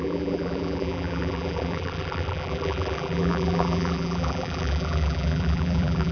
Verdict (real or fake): fake